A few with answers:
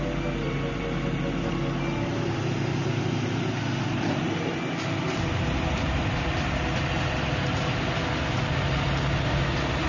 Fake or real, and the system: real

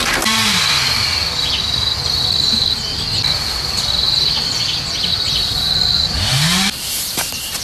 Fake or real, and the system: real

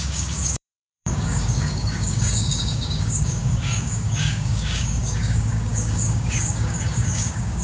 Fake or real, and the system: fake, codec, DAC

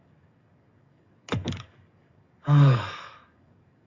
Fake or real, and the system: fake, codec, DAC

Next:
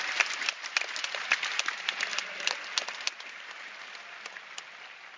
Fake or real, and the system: real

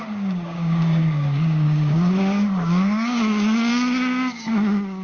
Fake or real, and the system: fake, codec, DAC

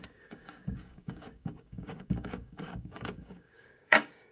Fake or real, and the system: fake, codec, DAC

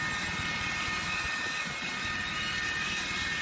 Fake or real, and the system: real